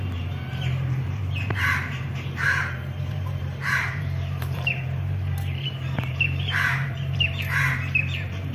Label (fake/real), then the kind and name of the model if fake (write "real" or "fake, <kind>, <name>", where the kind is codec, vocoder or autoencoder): fake, vocoder, BigVGAN v2